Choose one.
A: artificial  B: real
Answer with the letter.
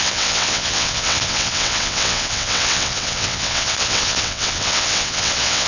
A